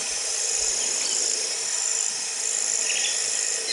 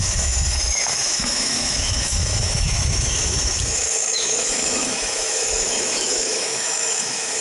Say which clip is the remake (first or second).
second